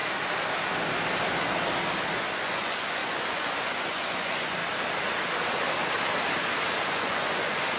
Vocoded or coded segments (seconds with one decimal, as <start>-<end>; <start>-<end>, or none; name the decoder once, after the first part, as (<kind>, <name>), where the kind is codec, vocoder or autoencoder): 2.3-4.6 (vocoder, Vocos); 6.9-7.8